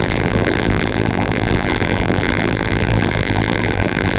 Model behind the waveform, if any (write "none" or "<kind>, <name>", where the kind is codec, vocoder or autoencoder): vocoder, BigVGAN v2